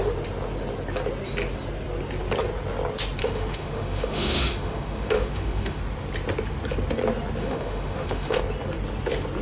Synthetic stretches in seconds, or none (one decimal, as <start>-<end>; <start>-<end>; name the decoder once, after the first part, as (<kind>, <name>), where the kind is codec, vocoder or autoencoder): 3.2-5.8 (autoencoder, DAC-VAE); 7.4-8.4